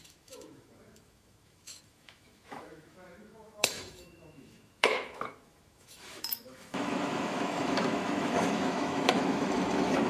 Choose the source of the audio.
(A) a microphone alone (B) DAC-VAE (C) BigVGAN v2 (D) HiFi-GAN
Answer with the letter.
B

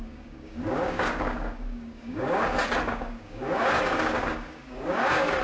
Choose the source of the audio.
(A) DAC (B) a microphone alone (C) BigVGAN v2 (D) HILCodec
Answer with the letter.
A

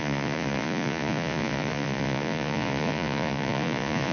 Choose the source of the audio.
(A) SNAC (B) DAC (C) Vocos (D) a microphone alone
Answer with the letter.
C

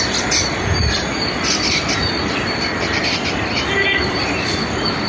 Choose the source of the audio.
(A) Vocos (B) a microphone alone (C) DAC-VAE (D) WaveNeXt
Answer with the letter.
B